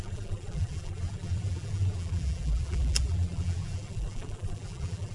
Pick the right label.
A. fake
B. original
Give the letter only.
A